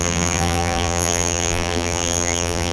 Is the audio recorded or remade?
remade